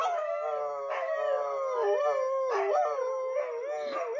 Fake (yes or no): no